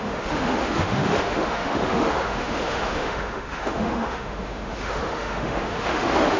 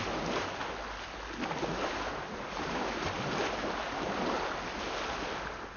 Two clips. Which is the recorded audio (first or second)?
second